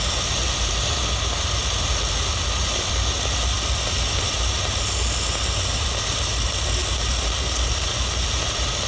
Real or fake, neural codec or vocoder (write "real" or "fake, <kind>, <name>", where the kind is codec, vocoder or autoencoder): real